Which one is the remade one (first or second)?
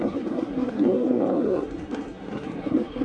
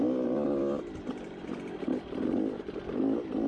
first